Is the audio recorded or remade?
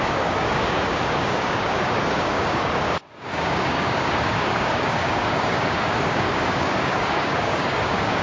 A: remade